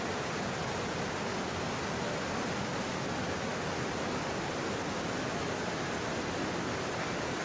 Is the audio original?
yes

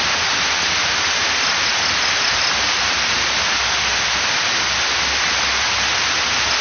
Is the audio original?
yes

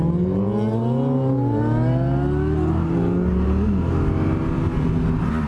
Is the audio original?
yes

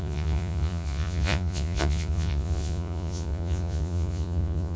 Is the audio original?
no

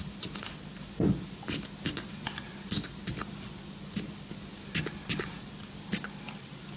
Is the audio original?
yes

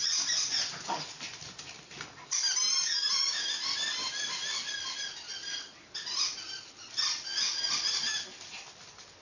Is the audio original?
no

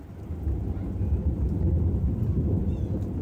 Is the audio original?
no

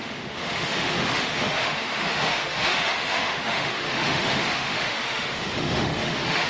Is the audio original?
no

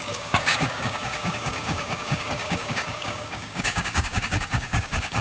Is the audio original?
no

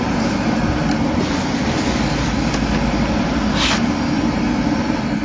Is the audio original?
yes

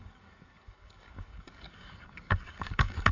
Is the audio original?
no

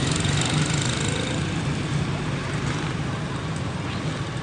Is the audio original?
yes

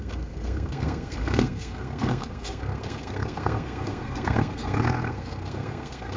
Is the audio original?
no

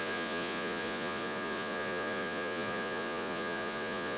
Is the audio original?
no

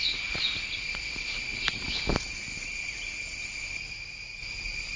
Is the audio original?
yes